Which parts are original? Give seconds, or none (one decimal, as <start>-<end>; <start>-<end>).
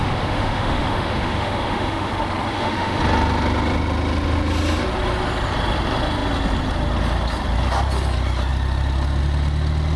2.1-2.5; 3.0-10.0